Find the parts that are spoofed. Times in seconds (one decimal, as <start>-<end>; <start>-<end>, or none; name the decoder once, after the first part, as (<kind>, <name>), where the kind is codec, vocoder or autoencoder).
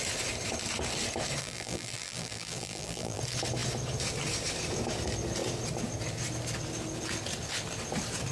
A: 1.4-3.2 (vocoder, BigVGAN v2)